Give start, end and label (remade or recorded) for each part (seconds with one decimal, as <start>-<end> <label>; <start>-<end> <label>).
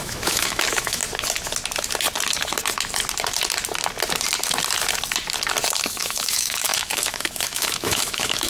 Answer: 0.0-1.0 remade; 1.0-5.9 recorded; 5.9-8.5 remade